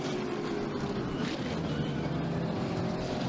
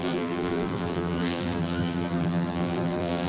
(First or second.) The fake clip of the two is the second